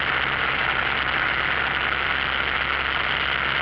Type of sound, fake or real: real